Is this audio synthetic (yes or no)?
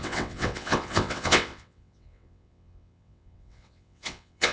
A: yes